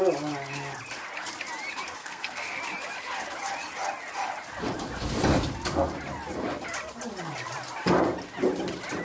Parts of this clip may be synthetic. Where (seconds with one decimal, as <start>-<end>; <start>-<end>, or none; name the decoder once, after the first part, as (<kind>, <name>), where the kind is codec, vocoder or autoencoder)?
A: 2.0-2.6 (codec, SNAC)